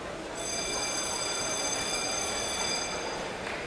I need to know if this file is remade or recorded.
recorded